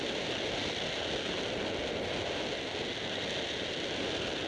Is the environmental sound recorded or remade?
recorded